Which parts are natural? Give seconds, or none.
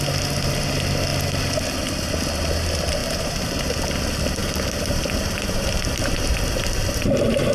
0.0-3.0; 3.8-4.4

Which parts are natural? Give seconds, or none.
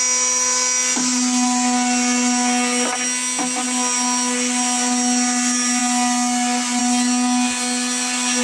0.0-8.4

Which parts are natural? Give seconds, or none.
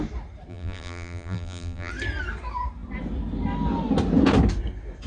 0.0-0.5; 1.9-5.1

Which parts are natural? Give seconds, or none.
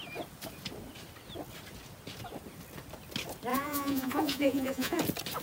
0.0-3.5; 5.0-5.4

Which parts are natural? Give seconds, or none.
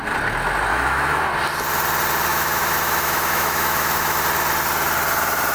0.0-0.7; 1.3-2.3; 4.2-5.5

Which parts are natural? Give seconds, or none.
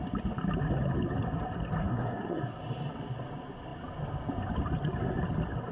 0.0-1.8; 2.4-5.7